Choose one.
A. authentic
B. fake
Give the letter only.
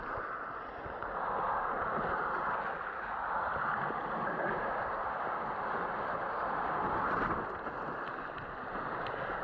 A